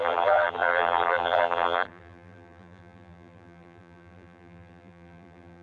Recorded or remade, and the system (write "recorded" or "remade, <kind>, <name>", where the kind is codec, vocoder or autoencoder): remade, vocoder, BigVGAN v2